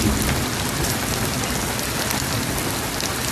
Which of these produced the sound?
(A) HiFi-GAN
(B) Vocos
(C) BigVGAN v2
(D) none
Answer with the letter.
D